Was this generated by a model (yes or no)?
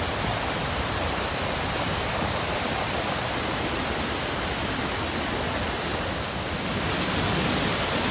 no